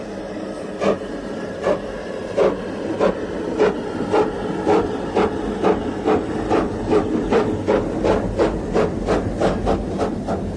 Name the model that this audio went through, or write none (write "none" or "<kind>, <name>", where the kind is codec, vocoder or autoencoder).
none